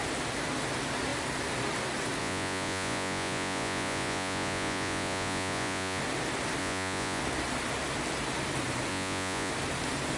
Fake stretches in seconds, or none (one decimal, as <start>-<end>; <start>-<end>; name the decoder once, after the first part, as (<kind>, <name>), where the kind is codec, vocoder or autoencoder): 2.2-6.0 (vocoder, Vocos); 6.6-7.2; 8.9-9.5